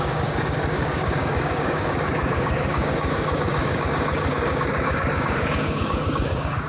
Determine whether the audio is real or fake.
fake